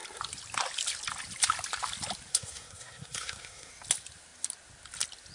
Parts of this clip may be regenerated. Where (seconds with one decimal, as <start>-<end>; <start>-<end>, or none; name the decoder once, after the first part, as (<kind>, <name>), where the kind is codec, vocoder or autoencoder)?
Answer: 2.3-3.7 (codec, SNAC)

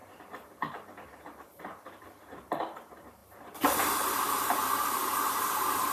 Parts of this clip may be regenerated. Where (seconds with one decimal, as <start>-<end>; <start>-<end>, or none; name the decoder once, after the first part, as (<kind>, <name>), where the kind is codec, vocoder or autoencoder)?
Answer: 3.2-4.4 (vocoder, BigVGAN v2); 5.0-5.9

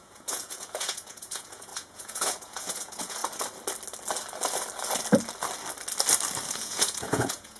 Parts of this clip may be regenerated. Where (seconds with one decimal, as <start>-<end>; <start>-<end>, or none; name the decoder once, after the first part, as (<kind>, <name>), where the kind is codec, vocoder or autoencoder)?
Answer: 0.0-3.2 (vocoder, Vocos); 6.5-7.6